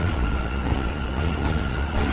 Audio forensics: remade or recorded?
remade